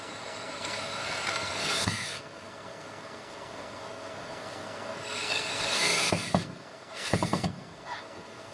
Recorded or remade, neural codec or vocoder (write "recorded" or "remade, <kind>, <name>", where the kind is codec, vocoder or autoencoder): remade, codec, SNAC